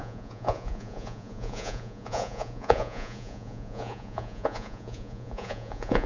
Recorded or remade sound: remade